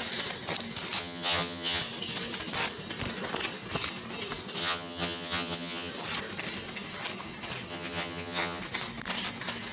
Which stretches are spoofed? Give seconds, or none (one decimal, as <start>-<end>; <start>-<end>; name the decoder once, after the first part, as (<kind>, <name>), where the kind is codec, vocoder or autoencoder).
1.0-1.8 (vocoder, HiFi-GAN); 4.6-5.9; 7.7-8.6